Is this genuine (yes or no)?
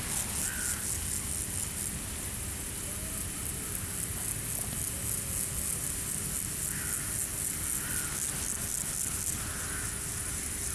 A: yes